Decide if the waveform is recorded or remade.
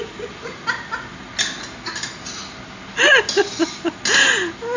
recorded